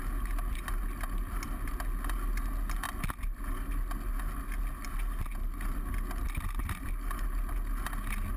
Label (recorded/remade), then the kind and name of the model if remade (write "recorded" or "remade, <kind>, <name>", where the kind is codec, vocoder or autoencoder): recorded